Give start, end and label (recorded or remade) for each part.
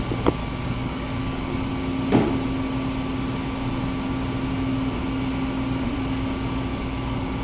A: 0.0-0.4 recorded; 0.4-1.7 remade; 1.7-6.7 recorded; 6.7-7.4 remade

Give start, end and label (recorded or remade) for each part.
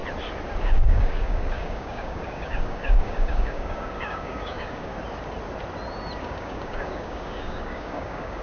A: 0.0-0.6 recorded; 0.6-4.9 remade; 4.9-6.2 recorded; 6.2-8.4 remade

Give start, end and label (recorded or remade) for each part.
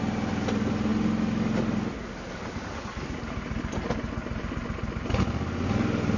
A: 0.0-6.2 recorded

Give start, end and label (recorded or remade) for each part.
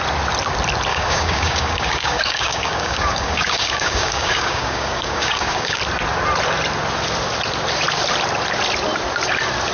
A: 0.0-0.9 recorded; 0.9-5.8 remade; 5.8-9.7 recorded